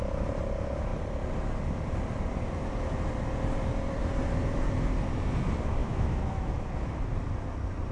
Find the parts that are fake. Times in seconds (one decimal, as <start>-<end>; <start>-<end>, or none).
5.8-7.0